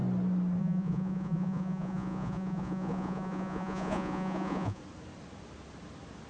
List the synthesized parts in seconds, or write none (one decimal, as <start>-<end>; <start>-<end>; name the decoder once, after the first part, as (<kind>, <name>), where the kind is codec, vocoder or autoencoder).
0.6-4.8 (vocoder, Vocos)